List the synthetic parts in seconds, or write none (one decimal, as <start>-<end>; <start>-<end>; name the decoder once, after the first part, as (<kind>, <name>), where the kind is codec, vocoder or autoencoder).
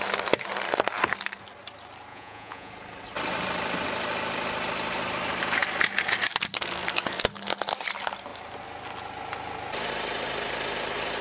2.1-2.7 (vocoder, Vocos)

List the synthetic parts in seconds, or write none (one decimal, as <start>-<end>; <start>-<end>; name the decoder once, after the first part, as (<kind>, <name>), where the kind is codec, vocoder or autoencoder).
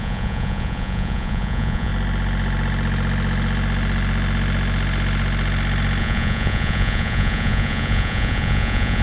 0.0-1.9 (vocoder, Vocos); 6.0-9.0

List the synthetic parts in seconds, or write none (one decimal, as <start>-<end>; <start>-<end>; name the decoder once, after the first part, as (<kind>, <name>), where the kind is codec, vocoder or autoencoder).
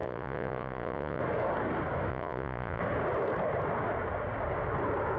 0.0-1.2 (vocoder, Vocos); 2.1-2.8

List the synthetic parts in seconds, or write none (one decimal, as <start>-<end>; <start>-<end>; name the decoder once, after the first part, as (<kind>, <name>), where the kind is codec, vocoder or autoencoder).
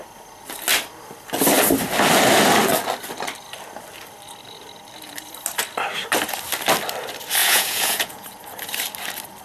7.4-8.3 (vocoder, Vocos)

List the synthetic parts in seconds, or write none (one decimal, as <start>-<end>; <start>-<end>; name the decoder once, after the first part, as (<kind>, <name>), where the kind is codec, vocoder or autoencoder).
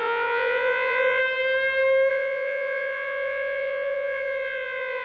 0.0-1.2 (vocoder, Vocos); 2.1-5.0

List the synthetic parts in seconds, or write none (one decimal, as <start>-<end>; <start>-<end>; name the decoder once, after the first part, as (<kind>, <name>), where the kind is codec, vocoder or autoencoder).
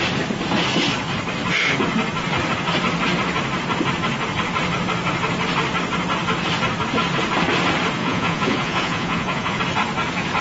8.0-9.6 (vocoder, Vocos)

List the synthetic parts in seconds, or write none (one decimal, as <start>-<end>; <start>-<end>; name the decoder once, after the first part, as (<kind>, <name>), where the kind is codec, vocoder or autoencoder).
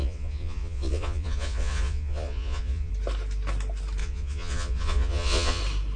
0.0-2.9 (vocoder, Vocos); 4.0-5.6